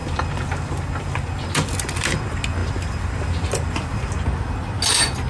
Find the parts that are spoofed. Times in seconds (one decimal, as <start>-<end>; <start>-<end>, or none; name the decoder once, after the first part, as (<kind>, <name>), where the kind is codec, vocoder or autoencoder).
none